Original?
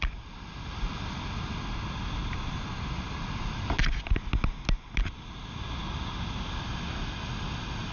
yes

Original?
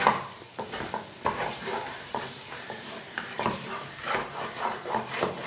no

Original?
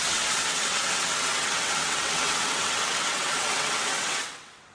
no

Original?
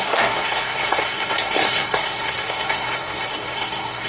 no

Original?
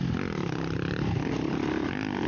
yes